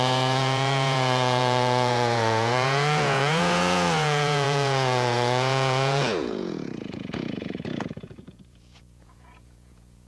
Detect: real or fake fake